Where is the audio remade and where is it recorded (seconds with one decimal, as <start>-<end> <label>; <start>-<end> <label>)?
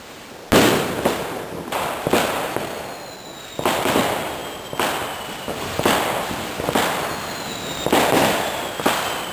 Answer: 0.0-9.3 recorded